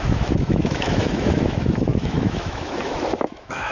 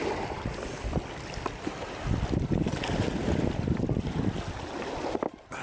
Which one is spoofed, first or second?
first